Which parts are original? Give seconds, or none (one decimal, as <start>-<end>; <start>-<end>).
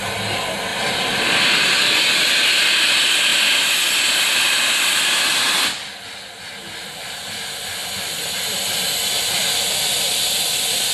0.0-0.7; 2.5-10.9